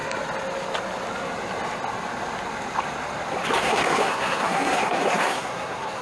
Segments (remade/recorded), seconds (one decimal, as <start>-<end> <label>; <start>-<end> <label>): 0.0-3.6 recorded; 3.6-6.0 remade